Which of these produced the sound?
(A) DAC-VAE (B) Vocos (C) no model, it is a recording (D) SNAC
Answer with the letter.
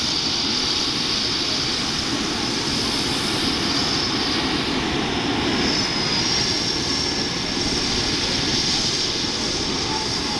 C